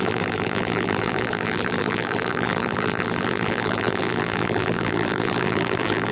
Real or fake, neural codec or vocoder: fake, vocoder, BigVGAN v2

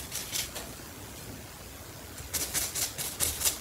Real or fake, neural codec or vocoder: real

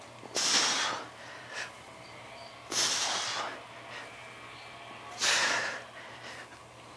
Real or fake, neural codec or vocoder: real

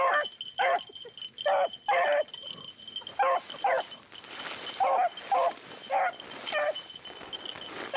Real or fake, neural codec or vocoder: real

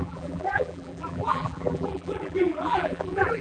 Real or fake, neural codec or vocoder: fake, vocoder, BigVGAN v2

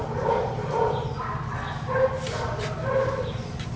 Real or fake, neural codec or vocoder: real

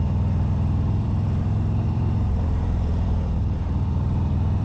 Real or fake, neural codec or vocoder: fake, vocoder, BigVGAN v2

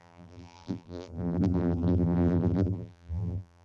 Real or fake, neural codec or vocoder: fake, vocoder, BigVGAN v2